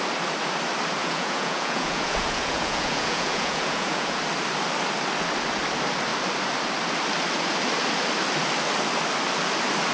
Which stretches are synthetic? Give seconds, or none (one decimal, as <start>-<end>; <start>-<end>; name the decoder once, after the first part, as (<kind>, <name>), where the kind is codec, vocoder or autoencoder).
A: 1.0-4.2 (vocoder, Vocos)